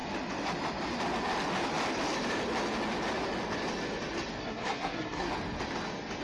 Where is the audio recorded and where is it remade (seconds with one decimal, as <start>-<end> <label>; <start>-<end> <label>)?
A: 0.0-4.4 recorded; 4.4-5.3 remade; 5.3-6.2 recorded

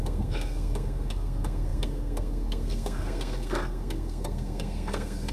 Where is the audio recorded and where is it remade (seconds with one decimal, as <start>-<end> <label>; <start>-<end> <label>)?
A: 0.0-5.3 remade